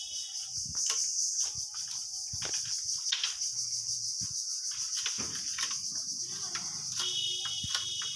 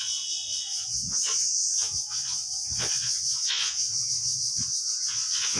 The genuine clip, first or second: first